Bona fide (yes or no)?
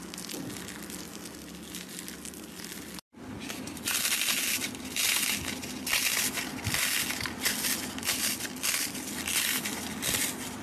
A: yes